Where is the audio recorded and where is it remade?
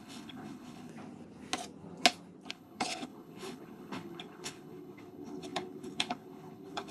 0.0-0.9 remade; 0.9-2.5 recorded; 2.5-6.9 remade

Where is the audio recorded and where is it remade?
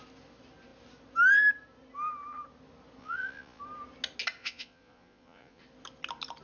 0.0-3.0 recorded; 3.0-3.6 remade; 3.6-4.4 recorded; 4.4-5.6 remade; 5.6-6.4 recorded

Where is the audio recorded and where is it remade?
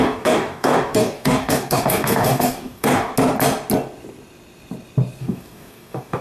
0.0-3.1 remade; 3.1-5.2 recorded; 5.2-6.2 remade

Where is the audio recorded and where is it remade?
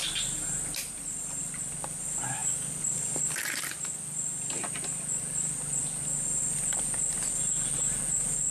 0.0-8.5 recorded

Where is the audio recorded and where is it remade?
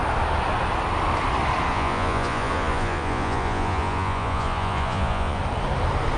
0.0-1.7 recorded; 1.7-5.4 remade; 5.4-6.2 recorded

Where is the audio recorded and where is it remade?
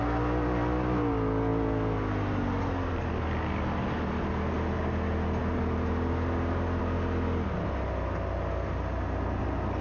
0.0-9.8 recorded